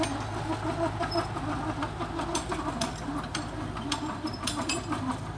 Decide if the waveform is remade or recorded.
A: recorded